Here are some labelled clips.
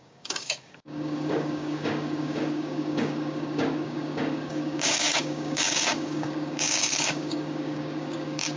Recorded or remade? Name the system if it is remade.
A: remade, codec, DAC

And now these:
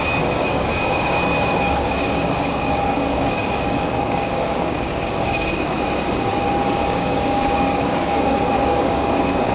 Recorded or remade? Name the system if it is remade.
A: remade, codec, DAC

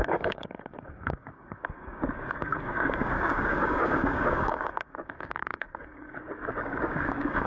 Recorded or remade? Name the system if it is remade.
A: remade, codec, DAC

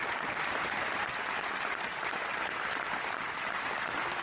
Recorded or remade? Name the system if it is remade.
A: recorded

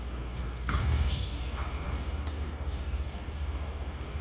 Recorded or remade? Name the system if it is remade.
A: remade, codec, DAC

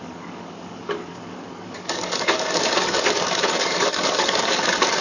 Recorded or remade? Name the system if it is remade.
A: remade, codec, DAC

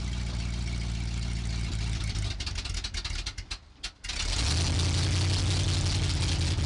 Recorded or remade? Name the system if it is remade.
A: recorded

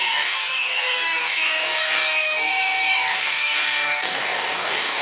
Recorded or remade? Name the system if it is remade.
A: remade, codec, DAC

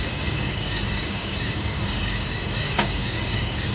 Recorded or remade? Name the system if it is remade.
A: remade, codec, DAC